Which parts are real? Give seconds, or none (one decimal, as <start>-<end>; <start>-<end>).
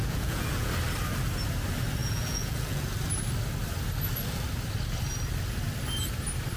0.7-2.0; 2.8-6.6